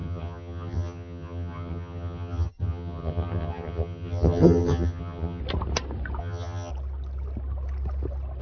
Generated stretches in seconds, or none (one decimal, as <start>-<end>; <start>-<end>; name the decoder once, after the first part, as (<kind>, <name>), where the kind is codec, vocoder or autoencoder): 0.0-5.4 (vocoder, HiFi-GAN); 6.2-6.7